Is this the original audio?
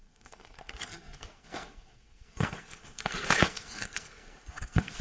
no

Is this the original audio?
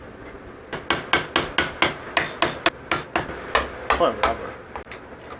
yes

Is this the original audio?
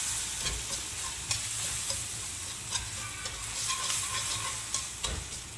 yes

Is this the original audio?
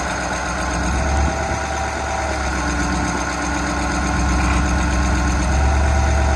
yes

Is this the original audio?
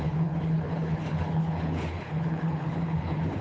no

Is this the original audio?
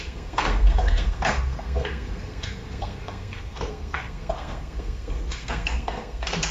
no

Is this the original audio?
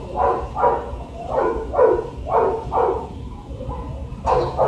yes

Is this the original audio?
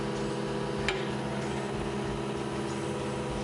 yes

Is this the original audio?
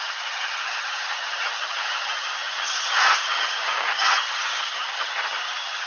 no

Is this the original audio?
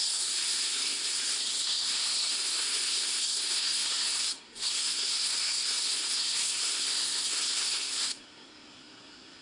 no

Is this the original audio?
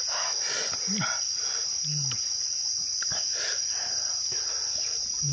yes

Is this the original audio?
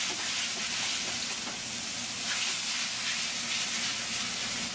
yes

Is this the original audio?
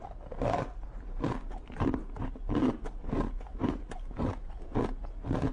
yes